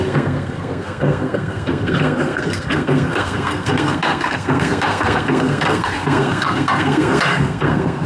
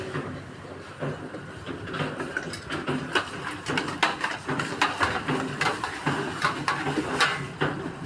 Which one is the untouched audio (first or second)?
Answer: second